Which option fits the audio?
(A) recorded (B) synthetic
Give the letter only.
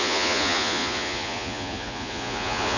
B